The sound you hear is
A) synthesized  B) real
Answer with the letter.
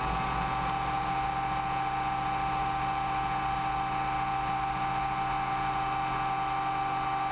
B